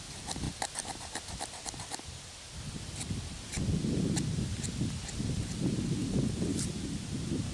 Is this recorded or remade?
recorded